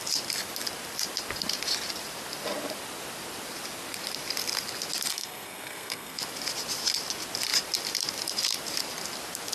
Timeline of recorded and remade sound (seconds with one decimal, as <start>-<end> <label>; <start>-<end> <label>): 0.0-5.1 recorded; 5.1-6.2 remade; 6.2-9.5 recorded